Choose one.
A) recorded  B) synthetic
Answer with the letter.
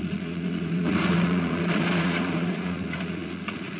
B